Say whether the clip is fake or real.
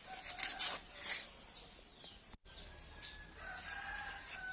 real